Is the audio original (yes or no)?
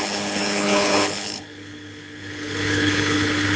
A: no